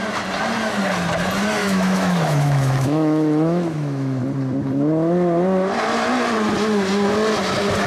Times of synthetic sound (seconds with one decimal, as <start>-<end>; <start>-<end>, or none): 1.6-4.2